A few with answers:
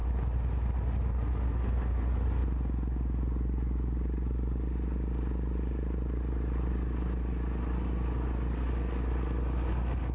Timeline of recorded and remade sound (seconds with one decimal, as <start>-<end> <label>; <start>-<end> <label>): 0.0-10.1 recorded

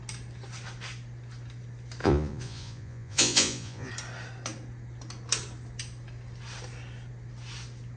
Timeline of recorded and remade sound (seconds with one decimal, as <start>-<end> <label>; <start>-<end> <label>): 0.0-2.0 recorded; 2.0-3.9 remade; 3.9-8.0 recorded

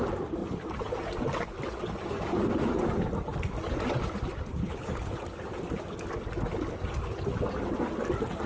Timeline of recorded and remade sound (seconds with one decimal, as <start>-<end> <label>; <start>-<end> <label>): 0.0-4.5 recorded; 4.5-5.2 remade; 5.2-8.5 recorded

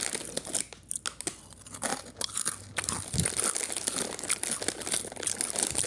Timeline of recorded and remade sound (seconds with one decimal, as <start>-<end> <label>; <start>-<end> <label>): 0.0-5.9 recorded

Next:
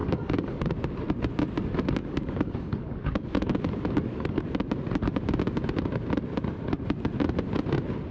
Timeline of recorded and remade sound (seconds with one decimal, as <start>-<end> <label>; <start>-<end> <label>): 0.0-0.7 remade; 0.7-2.0 recorded; 2.0-4.4 remade; 4.4-8.1 recorded

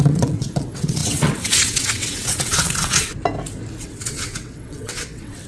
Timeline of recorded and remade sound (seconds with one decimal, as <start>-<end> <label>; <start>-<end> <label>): 0.0-3.1 remade; 3.1-3.8 recorded; 3.8-5.5 remade

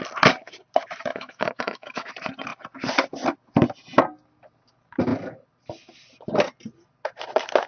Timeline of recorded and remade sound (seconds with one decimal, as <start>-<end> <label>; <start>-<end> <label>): 0.0-1.1 recorded; 1.1-2.1 remade; 2.1-7.7 recorded

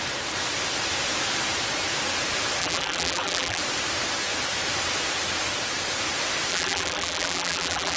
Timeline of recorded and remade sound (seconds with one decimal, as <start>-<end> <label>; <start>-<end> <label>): 0.0-2.6 recorded; 2.6-3.6 remade; 3.6-6.5 recorded; 6.5-8.0 remade